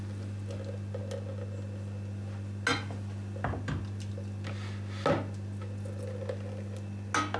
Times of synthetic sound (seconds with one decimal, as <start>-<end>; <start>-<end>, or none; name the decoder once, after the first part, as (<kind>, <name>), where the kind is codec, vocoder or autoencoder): none